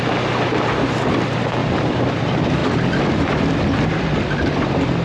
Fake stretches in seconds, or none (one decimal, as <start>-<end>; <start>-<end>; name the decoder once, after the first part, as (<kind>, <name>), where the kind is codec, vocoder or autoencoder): 1.6-2.2 (vocoder, BigVGAN v2); 2.6-4.5